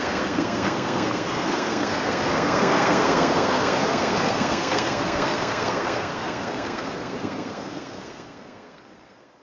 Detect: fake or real fake